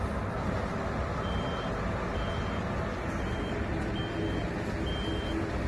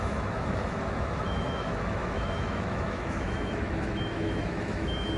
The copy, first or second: second